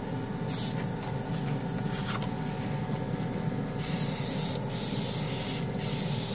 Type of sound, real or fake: real